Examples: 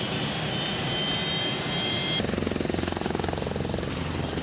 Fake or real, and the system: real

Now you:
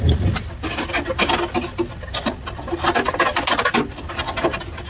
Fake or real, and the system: real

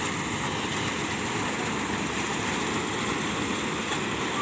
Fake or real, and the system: real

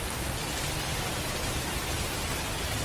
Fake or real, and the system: real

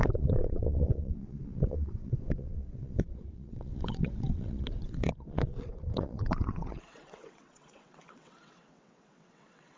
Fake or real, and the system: fake, vocoder, WaveNeXt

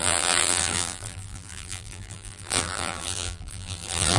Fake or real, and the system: fake, vocoder, BigVGAN v2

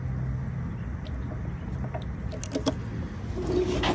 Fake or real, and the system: real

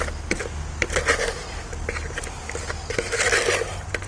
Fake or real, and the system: real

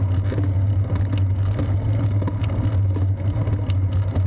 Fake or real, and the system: real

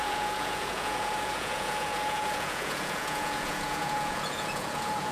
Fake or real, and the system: fake, vocoder, Vocos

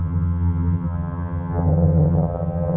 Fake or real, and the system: fake, vocoder, HiFi-GAN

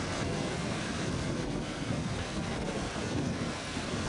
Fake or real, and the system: fake, codec, SNAC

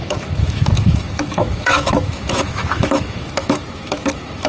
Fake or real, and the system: fake, autoencoder, DAC-VAE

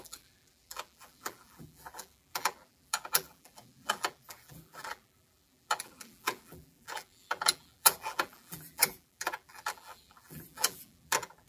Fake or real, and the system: fake, vocoder, BigVGAN v2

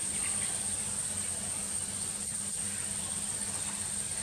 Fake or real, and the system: real